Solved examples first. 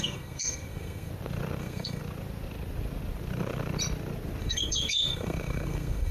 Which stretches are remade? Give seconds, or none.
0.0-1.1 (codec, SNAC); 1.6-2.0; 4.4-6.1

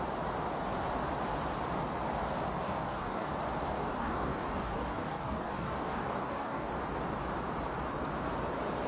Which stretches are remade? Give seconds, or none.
2.6-3.3 (codec, DAC); 3.7-6.7

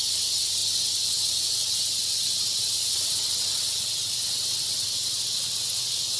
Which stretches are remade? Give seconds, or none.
0.0-6.2 (vocoder, WaveNeXt)

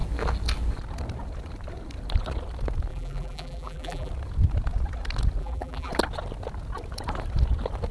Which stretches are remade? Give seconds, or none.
2.9-4.1 (vocoder, BigVGAN v2); 5.4-5.9

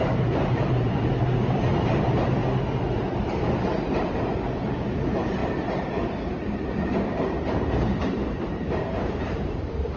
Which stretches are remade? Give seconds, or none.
0.0-2.4 (vocoder, BigVGAN v2); 4.1-10.0

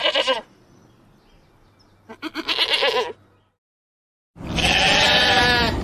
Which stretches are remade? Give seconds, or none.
none